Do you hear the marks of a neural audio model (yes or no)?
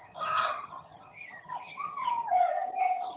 yes